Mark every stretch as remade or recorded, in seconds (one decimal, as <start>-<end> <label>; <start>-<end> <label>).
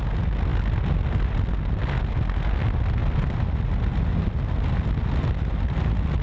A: 0.0-6.2 recorded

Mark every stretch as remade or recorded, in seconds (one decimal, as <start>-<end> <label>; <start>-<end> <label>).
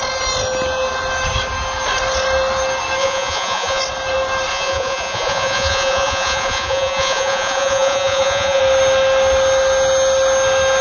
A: 0.0-3.0 recorded; 3.0-3.8 remade; 3.8-4.5 recorded; 4.5-8.6 remade; 8.6-10.8 recorded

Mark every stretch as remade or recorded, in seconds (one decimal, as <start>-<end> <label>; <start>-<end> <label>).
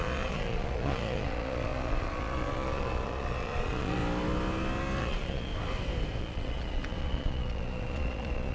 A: 0.0-4.0 remade; 4.0-5.0 recorded; 5.0-5.5 remade; 5.5-6.2 recorded; 6.2-8.5 remade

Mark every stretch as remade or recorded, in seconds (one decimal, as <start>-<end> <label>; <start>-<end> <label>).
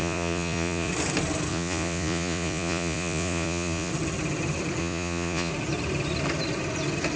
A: 0.0-0.9 remade; 0.9-1.5 recorded; 1.5-3.9 remade; 3.9-4.8 recorded; 4.8-5.5 remade; 5.5-7.2 recorded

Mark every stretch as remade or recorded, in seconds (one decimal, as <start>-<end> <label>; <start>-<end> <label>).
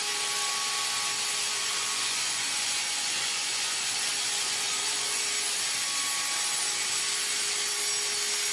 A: 0.0-1.4 recorded; 1.4-5.2 remade; 5.2-8.5 recorded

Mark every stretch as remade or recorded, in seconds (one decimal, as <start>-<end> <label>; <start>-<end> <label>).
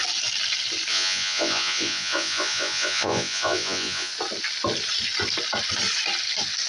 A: 0.0-0.9 recorded; 0.9-4.1 remade; 4.1-6.7 recorded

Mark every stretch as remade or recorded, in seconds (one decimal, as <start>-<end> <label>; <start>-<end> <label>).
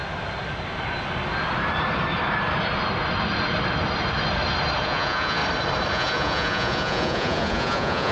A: 0.0-4.8 recorded; 4.8-5.4 remade; 5.4-5.9 recorded; 5.9-8.1 remade